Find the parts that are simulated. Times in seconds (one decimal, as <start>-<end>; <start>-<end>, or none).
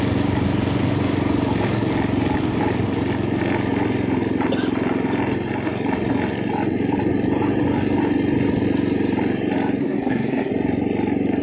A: 9.8-10.5